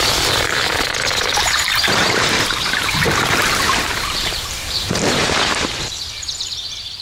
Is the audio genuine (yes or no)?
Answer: no